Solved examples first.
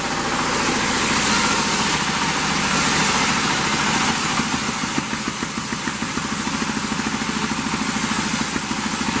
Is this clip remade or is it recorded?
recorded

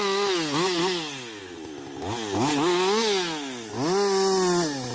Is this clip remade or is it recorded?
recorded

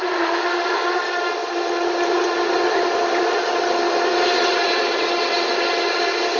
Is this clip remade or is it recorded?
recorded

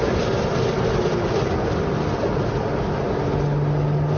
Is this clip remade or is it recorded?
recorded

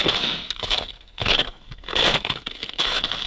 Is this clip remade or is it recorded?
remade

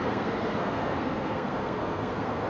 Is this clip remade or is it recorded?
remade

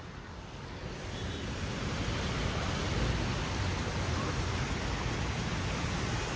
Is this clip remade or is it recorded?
recorded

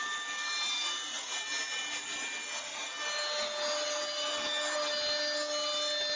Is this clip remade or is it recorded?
recorded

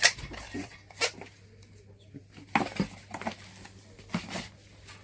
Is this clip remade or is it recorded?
recorded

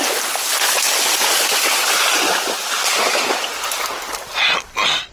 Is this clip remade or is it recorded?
recorded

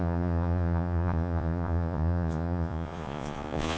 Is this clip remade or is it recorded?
remade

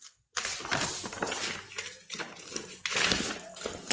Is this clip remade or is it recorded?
remade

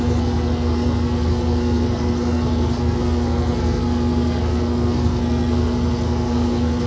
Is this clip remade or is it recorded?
remade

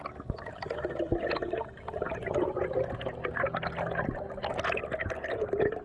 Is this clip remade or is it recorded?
recorded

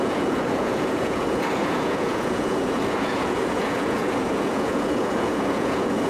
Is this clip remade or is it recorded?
remade